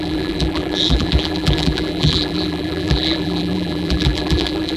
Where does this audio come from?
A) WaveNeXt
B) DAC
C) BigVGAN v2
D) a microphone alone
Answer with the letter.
C